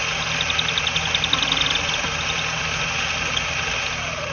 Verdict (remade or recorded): recorded